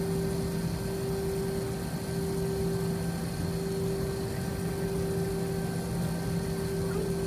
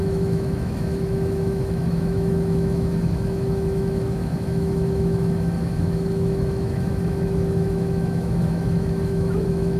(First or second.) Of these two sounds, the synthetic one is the second